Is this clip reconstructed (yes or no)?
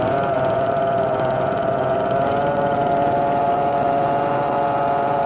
yes